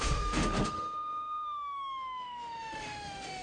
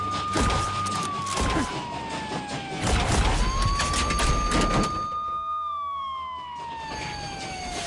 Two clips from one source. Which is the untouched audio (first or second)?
second